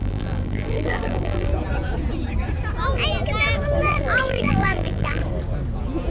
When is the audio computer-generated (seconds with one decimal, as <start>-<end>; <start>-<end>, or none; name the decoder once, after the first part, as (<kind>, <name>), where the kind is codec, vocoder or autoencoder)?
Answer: 0.0-1.5 (vocoder, BigVGAN v2); 3.9-5.2